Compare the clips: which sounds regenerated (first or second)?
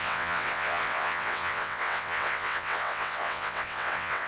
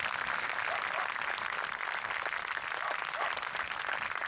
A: first